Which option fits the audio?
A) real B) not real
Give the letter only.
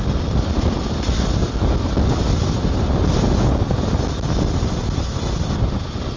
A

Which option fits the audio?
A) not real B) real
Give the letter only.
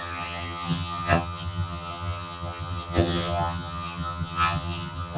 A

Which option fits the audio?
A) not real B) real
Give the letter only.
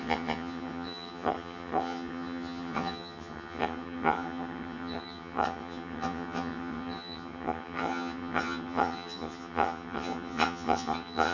A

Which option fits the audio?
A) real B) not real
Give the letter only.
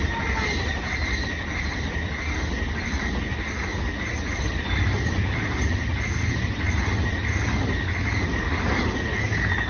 A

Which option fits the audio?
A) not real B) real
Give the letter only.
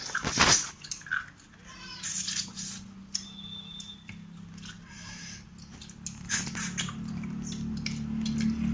B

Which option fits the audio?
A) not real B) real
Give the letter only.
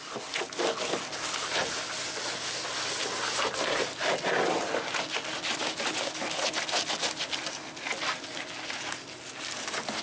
B